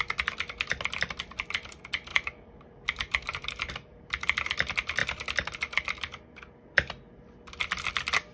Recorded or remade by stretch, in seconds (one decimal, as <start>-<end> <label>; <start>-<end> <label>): 0.0-2.1 recorded; 2.1-3.7 remade; 3.7-8.3 recorded